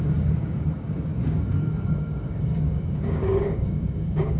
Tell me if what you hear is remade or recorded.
remade